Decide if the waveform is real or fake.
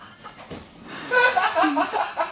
real